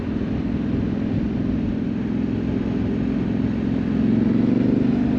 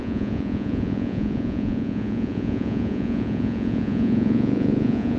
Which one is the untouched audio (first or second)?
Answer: first